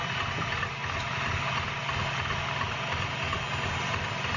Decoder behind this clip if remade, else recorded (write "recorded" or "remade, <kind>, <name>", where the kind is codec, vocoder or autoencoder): recorded